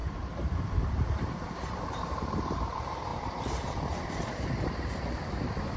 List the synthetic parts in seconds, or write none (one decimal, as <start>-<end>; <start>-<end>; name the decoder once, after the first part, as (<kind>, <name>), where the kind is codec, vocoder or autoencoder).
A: 0.0-5.8 (vocoder, BigVGAN v2)